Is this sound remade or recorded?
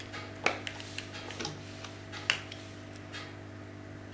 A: recorded